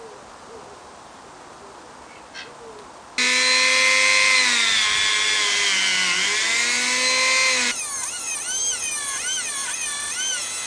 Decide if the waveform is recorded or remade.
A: recorded